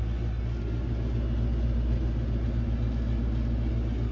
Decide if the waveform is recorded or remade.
recorded